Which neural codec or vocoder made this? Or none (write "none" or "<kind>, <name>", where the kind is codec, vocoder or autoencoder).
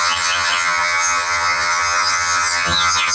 vocoder, HiFi-GAN